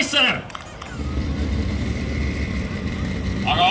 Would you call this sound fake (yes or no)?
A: yes